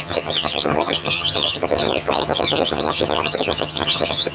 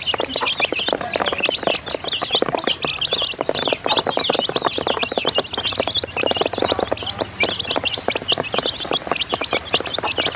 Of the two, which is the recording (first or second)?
second